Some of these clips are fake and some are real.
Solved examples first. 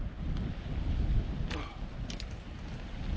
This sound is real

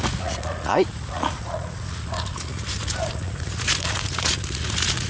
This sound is fake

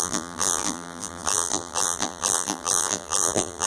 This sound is fake